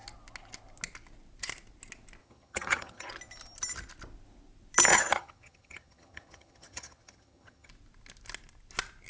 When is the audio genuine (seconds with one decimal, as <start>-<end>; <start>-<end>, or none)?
0.0-2.2; 3.1-4.9; 7.7-9.1